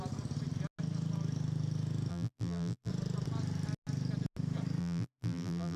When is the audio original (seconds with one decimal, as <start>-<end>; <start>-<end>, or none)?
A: 0.0-2.1; 2.9-4.8